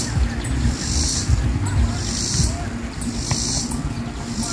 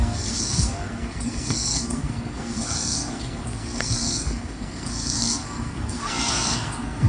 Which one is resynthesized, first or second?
second